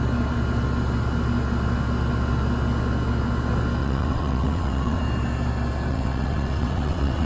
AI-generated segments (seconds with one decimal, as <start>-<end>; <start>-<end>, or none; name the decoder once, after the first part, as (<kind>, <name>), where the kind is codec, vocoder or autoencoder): 3.8-5.0 (vocoder, WaveNeXt); 5.9-7.3